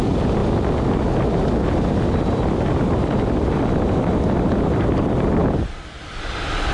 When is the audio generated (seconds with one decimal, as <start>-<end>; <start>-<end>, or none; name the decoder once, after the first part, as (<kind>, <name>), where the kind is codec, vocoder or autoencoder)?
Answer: 0.0-0.4 (vocoder, BigVGAN v2); 1.9-5.4